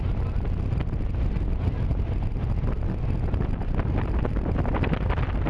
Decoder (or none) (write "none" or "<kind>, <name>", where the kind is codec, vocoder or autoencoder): none